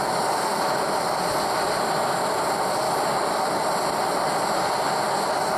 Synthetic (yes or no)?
no